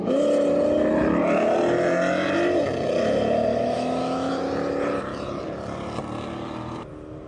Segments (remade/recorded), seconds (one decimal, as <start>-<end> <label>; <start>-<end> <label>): 0.0-3.5 recorded; 3.5-4.3 remade; 4.3-7.3 recorded